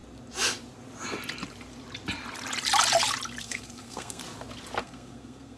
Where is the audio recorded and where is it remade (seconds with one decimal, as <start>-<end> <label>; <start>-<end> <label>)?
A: 0.0-3.4 recorded; 3.4-4.2 remade; 4.2-4.8 recorded; 4.8-5.6 remade